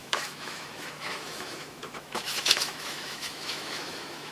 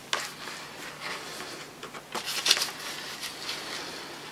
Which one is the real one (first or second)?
second